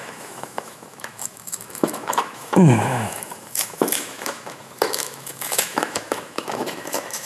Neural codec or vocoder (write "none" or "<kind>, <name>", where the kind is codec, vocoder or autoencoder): autoencoder, DAC-VAE